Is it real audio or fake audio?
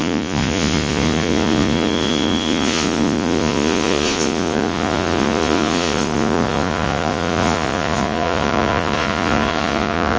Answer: fake